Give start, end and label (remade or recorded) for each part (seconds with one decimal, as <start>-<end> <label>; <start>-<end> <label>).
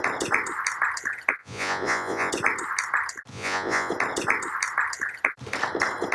0.0-1.4 recorded; 1.4-2.3 remade; 2.3-3.3 recorded; 3.3-3.9 remade; 3.9-6.1 recorded